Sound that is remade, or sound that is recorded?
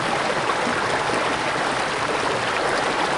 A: recorded